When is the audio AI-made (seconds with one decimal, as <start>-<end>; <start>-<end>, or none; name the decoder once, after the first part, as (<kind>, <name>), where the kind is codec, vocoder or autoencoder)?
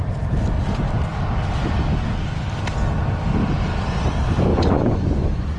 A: 4.5-5.6 (vocoder, Vocos)